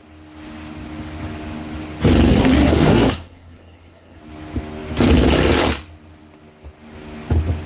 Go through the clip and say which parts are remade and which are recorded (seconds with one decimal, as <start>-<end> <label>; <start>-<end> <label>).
0.0-2.3 recorded; 2.3-4.2 remade; 4.2-7.7 recorded